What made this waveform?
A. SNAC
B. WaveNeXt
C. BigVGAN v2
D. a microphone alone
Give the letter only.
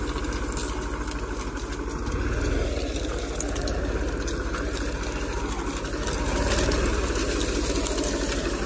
D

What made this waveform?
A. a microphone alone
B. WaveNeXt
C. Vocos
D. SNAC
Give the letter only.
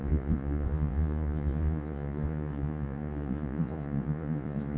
C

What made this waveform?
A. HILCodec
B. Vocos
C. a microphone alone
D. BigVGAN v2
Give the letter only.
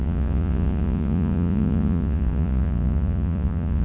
B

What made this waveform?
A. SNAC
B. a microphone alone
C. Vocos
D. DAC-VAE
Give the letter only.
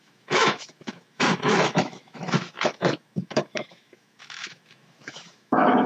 D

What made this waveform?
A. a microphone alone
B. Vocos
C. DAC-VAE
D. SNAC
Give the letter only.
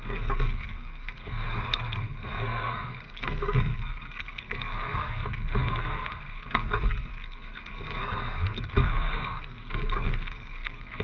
D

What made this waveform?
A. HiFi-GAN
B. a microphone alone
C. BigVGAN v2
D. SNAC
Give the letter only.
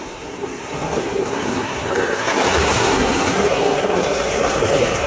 D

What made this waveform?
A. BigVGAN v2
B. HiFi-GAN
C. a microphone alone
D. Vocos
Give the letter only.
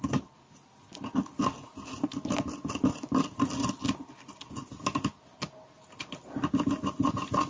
C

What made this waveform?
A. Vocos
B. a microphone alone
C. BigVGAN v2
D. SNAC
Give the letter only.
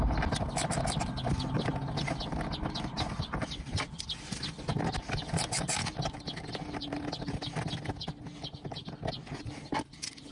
B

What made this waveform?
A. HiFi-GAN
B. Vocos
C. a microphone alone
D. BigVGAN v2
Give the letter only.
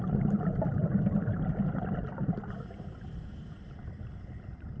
C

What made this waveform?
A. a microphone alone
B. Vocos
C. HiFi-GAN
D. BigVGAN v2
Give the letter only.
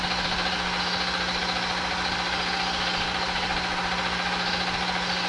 A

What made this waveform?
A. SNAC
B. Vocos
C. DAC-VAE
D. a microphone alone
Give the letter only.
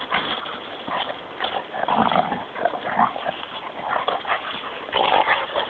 D